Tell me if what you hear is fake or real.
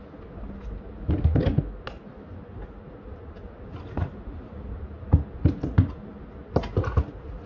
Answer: real